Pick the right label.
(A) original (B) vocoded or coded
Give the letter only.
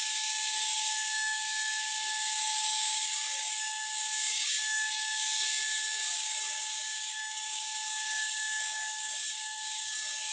B